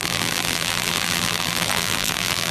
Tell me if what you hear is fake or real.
fake